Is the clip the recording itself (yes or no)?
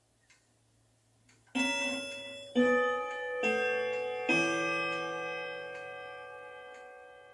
yes